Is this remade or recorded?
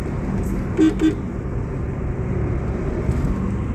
recorded